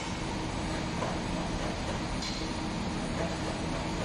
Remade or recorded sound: recorded